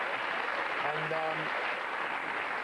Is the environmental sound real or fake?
real